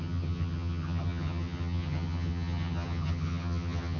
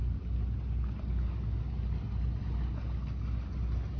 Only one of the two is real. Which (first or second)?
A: second